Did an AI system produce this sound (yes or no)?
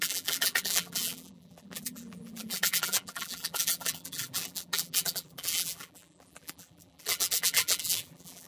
yes